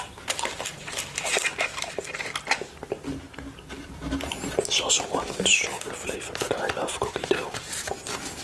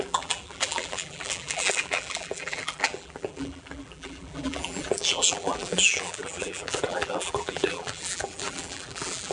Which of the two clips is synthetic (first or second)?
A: second